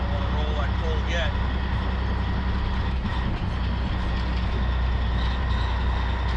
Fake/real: real